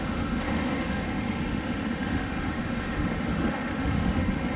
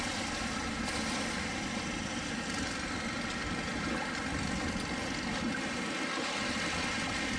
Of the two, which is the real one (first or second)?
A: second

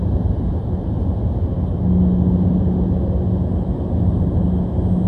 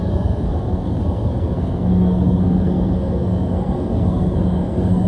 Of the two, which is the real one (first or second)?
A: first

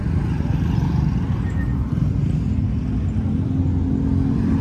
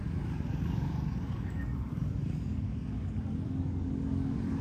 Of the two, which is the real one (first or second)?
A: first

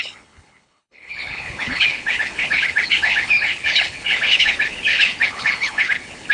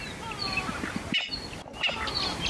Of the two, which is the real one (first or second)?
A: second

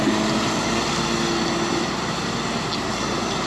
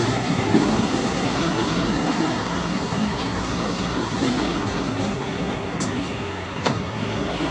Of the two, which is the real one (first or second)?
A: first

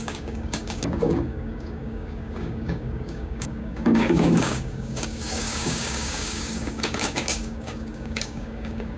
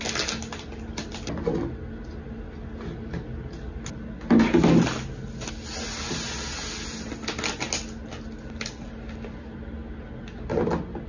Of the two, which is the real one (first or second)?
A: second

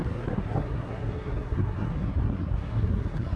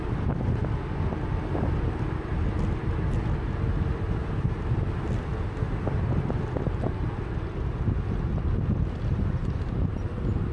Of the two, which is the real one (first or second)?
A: second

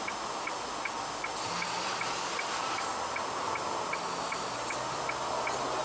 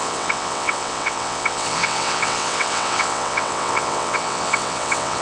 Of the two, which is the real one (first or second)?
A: first